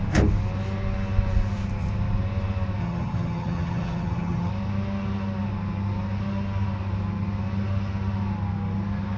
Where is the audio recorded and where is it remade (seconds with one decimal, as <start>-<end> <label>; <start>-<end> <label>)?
0.0-2.8 recorded; 2.8-4.5 remade; 4.5-9.2 recorded